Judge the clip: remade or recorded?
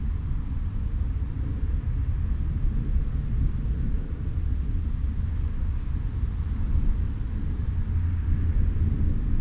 recorded